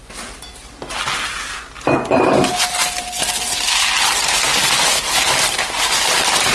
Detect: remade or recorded recorded